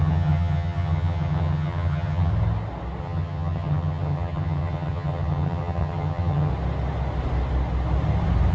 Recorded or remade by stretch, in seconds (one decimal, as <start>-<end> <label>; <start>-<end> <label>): 0.0-2.3 remade; 2.3-3.0 recorded; 3.0-6.5 remade; 6.5-8.5 recorded